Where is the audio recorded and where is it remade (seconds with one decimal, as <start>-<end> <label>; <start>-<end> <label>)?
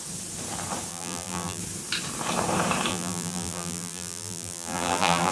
0.0-0.9 recorded; 0.9-1.6 remade; 1.6-2.9 recorded; 2.9-5.3 remade